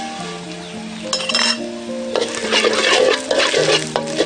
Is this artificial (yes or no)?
no